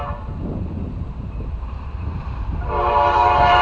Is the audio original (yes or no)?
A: no